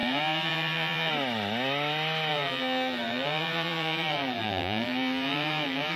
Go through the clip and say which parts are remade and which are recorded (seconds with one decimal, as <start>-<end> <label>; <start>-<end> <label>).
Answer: 0.0-1.1 remade; 1.1-2.3 recorded; 2.3-6.0 remade